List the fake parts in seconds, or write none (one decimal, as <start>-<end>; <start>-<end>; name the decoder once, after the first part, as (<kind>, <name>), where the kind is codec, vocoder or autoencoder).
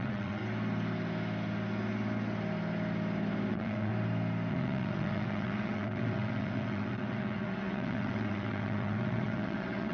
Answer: 0.0-0.4 (vocoder, WaveNeXt); 3.5-3.9; 4.5-9.9